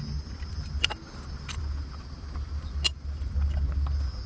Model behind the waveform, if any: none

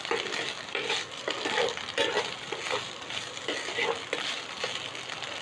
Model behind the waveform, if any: none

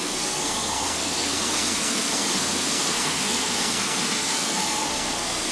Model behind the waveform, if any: codec, SNAC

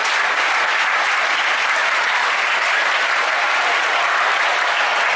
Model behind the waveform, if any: none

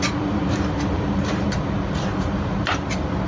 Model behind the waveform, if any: vocoder, BigVGAN v2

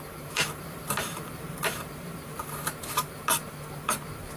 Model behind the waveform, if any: vocoder, BigVGAN v2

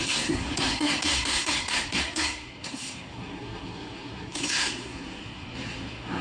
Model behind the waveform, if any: codec, SNAC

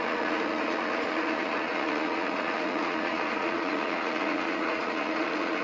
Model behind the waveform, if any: vocoder, Vocos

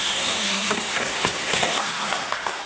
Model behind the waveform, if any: codec, SNAC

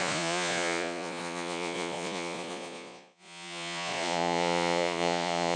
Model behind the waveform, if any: vocoder, Vocos